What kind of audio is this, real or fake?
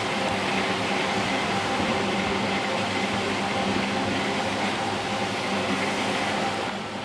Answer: real